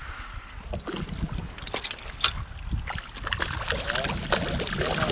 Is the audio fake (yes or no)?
no